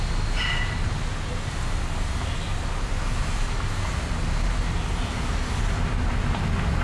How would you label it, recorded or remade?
recorded